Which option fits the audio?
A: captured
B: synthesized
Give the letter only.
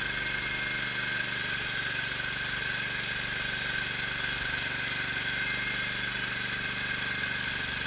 A